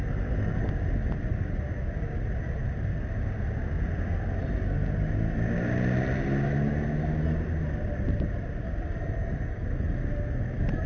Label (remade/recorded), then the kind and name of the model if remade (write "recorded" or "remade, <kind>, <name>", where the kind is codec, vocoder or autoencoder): recorded